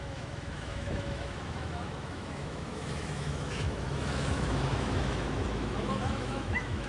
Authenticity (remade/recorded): remade